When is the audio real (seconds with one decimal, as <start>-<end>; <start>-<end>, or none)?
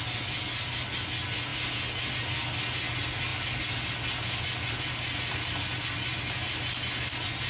0.0-7.5